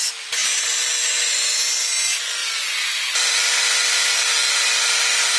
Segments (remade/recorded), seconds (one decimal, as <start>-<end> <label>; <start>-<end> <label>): 0.0-5.4 recorded

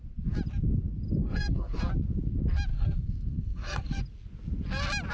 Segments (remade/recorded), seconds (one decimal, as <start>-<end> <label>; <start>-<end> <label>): 0.0-1.2 recorded; 1.2-1.8 remade; 1.8-2.7 recorded; 2.7-4.0 remade; 4.0-5.1 recorded